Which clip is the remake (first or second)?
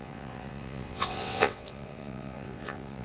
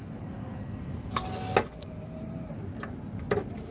first